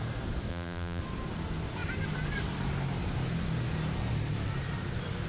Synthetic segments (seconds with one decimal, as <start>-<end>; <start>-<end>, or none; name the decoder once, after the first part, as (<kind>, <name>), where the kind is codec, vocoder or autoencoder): 0.5-1.0 (vocoder, BigVGAN v2)